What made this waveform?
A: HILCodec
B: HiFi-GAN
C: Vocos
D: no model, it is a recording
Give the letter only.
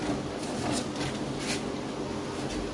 D